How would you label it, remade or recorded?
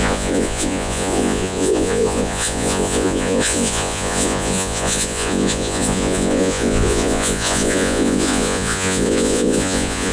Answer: remade